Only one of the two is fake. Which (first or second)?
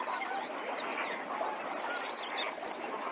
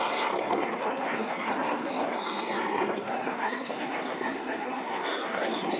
second